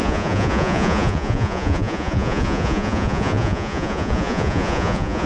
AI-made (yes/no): yes